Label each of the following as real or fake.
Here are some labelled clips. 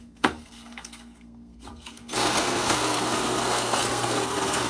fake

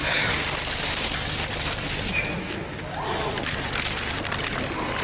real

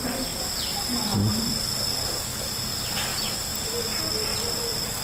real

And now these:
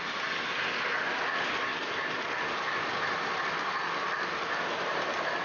real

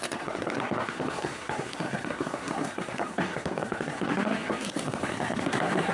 fake